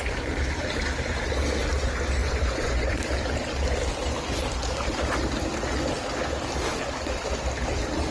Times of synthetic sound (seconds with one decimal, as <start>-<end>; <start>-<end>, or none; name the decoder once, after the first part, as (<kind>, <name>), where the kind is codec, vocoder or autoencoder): 2.2-3.0 (vocoder, Vocos)

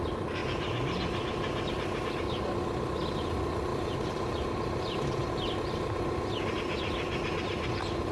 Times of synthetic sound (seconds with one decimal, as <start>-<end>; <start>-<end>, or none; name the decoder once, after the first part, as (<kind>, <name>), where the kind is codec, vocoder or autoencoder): 3.7-5.3 (vocoder, BigVGAN v2)

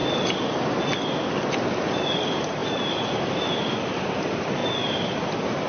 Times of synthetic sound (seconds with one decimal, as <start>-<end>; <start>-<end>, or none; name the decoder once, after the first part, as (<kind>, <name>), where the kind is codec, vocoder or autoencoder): none